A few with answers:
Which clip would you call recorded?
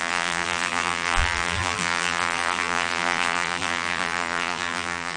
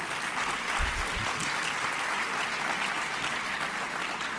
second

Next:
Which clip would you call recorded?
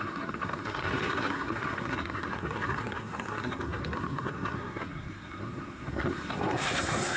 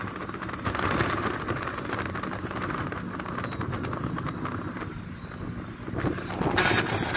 second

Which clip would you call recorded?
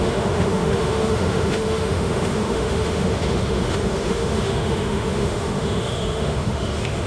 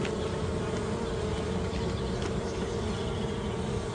second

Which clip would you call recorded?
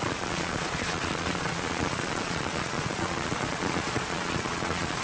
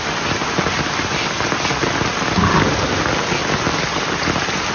second